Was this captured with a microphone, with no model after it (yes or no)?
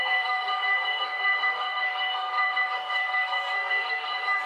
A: no